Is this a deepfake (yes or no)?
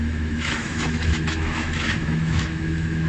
yes